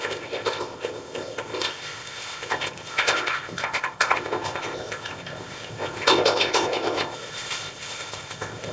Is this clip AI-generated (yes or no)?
yes